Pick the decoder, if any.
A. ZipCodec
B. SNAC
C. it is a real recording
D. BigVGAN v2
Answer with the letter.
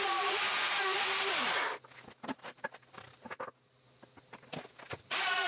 C